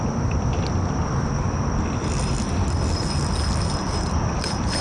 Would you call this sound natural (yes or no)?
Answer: yes